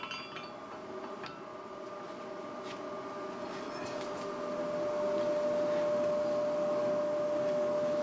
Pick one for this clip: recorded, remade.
recorded